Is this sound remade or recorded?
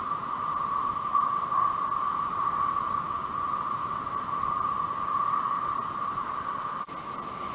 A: recorded